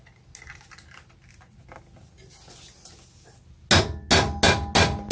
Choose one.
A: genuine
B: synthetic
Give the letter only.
A